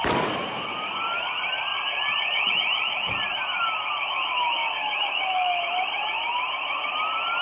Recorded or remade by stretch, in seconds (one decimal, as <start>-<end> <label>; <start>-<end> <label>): 0.0-4.6 recorded; 4.6-5.6 remade; 5.6-7.4 recorded

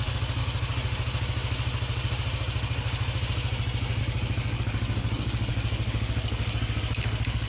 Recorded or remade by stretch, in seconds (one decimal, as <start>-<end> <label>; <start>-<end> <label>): 0.0-0.4 remade; 0.4-4.0 recorded; 4.0-7.5 remade